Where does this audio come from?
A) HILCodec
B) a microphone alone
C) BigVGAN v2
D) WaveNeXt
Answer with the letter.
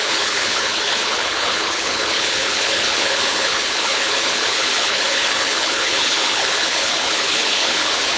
A